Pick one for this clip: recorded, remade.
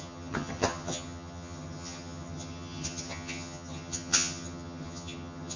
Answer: remade